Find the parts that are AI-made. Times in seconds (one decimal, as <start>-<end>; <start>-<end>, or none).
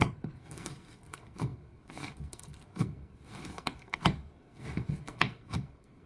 0.0-6.1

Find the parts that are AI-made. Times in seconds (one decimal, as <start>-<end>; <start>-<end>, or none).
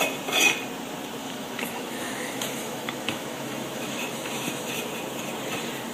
1.2-4.7